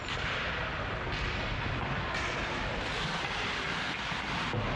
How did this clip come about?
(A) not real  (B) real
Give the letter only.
B